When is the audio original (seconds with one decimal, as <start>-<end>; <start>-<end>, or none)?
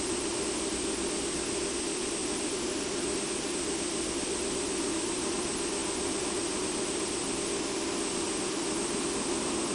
0.0-9.7